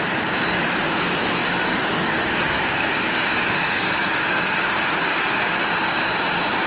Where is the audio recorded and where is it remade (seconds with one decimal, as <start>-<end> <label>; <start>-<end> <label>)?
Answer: 0.0-1.4 recorded; 1.4-5.4 remade; 5.4-6.7 recorded